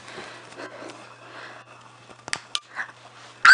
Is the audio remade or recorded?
recorded